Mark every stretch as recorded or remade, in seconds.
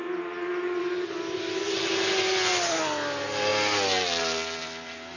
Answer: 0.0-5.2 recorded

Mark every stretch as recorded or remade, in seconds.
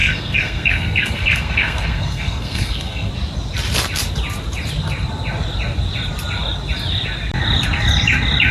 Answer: 0.0-3.1 remade; 3.1-8.5 recorded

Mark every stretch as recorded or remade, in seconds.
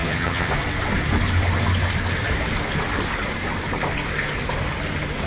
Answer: 0.0-0.5 remade; 0.5-5.3 recorded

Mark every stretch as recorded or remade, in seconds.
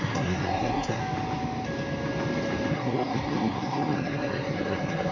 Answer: 0.0-1.0 remade; 1.0-2.7 recorded; 2.7-5.1 remade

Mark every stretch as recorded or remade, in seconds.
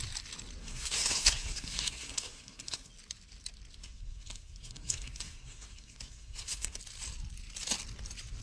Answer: 0.0-0.6 recorded; 0.6-2.9 remade; 2.9-3.8 recorded; 3.8-6.8 remade; 6.8-8.4 recorded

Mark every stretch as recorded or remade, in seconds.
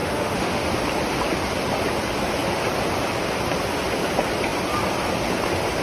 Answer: 0.0-0.7 remade; 0.7-5.8 recorded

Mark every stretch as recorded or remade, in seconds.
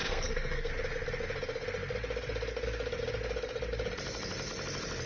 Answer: 0.0-0.7 remade; 0.7-5.1 recorded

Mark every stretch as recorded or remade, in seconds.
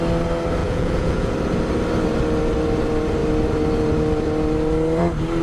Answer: 0.0-0.6 recorded; 0.6-1.3 remade; 1.3-5.4 recorded